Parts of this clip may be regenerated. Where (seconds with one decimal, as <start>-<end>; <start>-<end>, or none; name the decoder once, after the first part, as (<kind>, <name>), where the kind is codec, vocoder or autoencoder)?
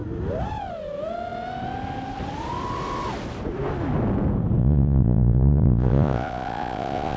4.6-7.2 (vocoder, Vocos)